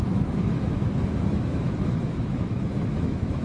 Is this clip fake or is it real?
fake